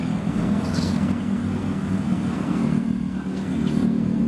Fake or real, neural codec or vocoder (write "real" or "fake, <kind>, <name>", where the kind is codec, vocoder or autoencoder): fake, codec, SNAC